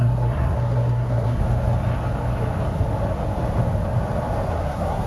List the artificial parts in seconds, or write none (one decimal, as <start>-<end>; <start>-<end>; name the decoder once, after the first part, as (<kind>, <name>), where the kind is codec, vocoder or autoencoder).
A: 0.0-1.4 (codec, SNAC); 4.5-5.1